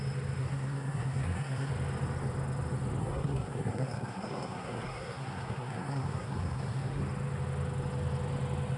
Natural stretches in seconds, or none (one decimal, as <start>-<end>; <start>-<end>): 0.0-0.4; 1.7-3.0; 7.0-8.8